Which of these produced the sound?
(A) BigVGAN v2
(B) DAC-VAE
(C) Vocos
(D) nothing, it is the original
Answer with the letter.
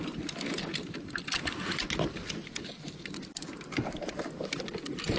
D